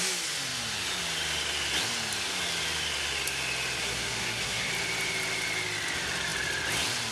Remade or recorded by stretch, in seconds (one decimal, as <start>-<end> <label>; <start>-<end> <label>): 0.0-3.8 recorded; 3.8-4.7 remade; 4.7-7.1 recorded